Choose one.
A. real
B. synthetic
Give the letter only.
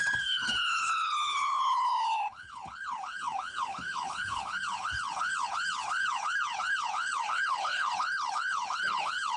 B